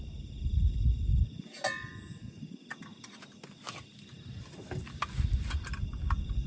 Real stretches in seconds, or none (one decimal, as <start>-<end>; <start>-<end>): 0.0-6.5